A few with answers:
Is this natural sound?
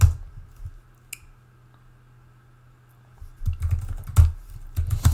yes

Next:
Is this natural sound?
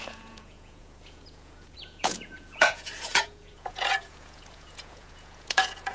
no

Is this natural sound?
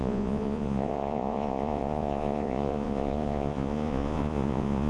no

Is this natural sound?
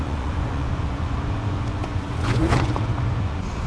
no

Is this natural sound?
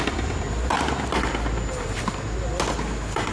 yes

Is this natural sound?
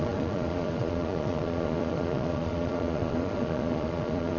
no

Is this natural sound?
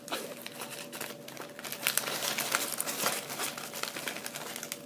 yes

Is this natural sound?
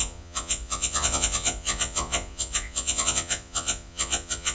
no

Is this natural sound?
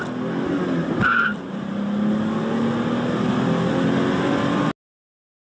yes